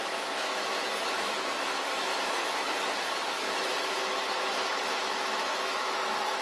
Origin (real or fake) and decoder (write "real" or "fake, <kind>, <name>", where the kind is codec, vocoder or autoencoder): fake, autoencoder, DAC-VAE